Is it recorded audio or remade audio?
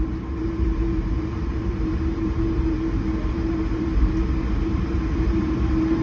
remade